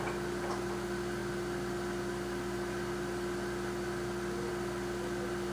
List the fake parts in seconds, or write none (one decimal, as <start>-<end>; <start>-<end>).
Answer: none